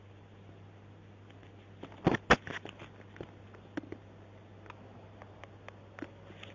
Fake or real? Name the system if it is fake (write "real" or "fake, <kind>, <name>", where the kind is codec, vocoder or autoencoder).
real